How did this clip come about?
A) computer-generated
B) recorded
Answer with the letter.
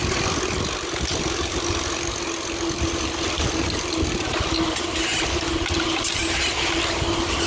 B